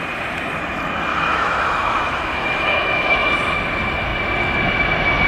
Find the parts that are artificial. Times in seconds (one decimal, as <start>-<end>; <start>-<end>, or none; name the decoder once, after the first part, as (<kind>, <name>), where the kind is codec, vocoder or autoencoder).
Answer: 1.1-3.3 (autoencoder, DAC-VAE)

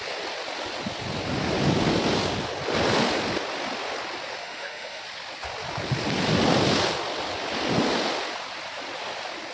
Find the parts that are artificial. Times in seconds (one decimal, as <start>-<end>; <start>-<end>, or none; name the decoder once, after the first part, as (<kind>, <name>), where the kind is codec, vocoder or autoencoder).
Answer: 4.4-5.0 (autoencoder, DAC-VAE)

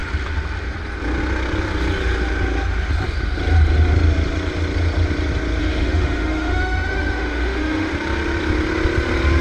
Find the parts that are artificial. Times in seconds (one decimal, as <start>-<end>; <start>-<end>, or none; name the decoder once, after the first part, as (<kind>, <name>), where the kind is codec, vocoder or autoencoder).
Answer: 5.6-7.9 (autoencoder, DAC-VAE)